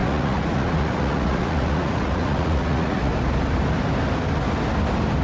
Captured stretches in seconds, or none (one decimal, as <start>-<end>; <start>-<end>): 3.1-5.2